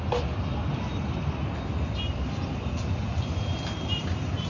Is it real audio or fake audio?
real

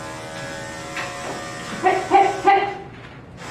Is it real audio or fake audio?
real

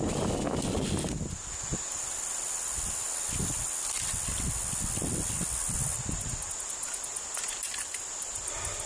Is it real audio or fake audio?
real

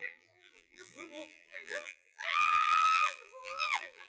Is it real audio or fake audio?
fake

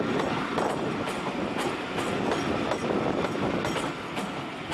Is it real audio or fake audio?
real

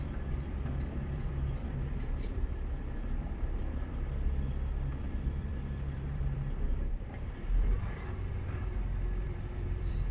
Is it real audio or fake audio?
fake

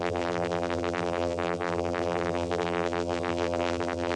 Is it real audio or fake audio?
fake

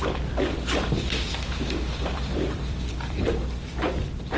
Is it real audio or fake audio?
fake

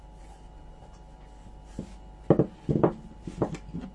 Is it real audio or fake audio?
real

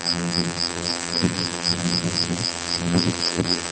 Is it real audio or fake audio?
fake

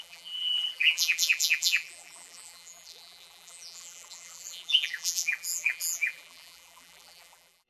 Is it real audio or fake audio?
fake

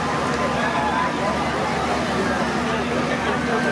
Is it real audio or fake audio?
real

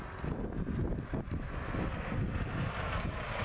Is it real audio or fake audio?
real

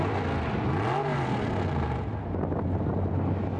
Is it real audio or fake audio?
real